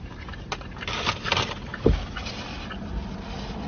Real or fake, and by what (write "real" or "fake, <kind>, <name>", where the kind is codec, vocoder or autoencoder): real